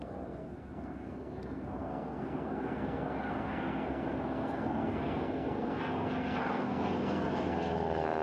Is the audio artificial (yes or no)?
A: yes